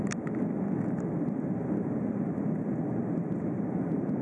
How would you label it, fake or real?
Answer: real